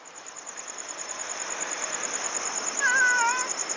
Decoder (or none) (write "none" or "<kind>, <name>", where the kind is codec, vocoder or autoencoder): vocoder, BigVGAN v2